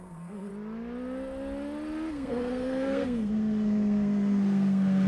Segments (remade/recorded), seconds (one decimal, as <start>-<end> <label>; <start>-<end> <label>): 0.0-0.5 remade; 0.5-2.1 recorded; 2.1-5.1 remade